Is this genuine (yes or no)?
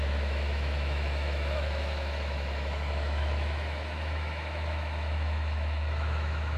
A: no